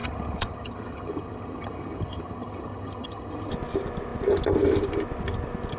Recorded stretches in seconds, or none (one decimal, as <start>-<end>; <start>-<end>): 3.5-5.8